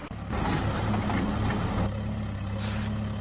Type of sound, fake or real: real